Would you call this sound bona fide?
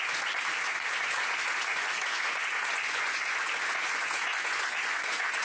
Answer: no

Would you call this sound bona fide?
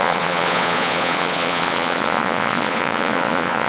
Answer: no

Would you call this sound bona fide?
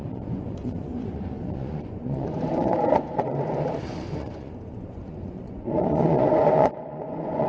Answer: no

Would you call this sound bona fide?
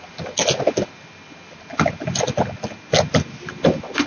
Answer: yes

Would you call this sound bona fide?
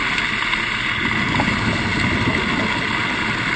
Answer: yes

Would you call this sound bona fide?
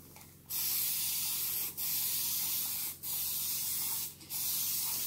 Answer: yes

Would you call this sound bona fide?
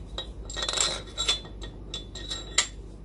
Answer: yes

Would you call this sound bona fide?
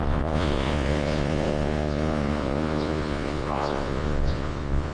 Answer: no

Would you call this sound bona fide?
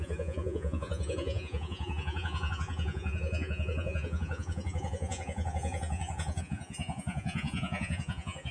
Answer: no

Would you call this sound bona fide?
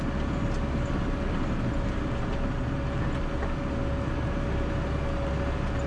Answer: yes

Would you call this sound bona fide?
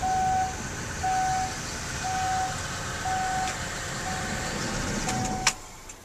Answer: yes